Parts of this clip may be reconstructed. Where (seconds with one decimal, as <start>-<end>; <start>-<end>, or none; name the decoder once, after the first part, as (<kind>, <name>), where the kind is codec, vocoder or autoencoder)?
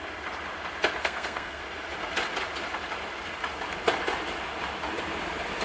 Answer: 1.0-1.6 (codec, SNAC)